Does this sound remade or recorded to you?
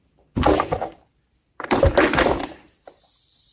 remade